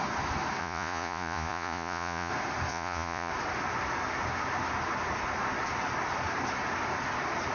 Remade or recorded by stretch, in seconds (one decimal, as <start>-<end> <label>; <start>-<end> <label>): 0.0-0.6 recorded; 0.6-2.3 remade; 2.3-2.7 recorded; 2.7-3.3 remade; 3.3-7.5 recorded

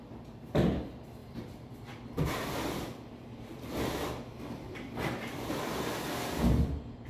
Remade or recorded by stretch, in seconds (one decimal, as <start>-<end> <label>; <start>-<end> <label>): 0.0-1.2 recorded; 1.2-5.5 remade; 5.5-7.1 recorded

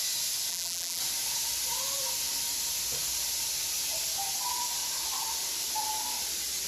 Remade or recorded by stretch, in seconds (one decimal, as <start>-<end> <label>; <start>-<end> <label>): 0.0-0.5 recorded; 0.5-1.0 remade; 1.0-6.7 recorded

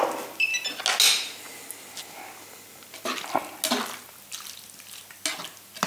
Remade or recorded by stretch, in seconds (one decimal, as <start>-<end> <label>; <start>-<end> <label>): 0.0-5.9 recorded